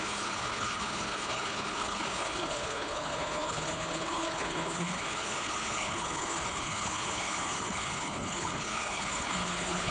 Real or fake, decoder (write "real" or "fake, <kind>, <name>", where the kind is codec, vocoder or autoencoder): fake, codec, HILCodec